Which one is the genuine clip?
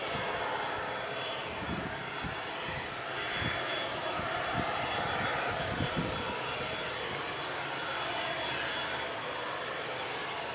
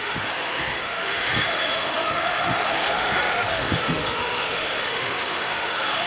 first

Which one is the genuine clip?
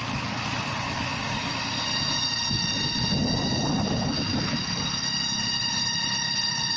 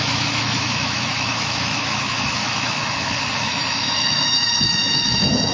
first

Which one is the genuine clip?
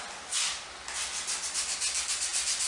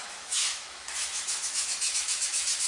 first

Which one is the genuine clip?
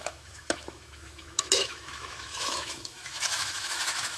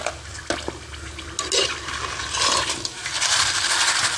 second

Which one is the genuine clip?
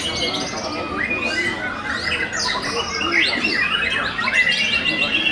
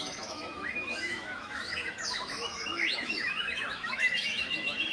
first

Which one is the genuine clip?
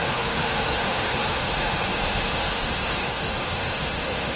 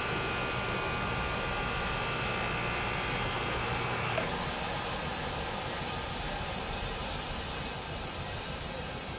second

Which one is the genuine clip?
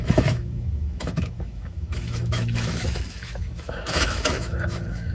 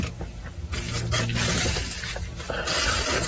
second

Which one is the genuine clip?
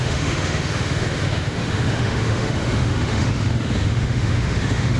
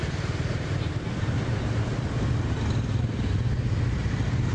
second